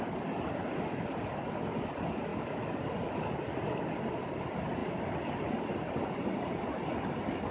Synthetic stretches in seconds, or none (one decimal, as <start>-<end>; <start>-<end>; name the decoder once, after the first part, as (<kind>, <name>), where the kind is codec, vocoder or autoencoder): none